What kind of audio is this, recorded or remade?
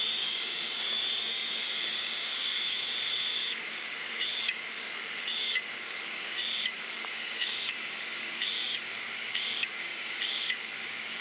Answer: remade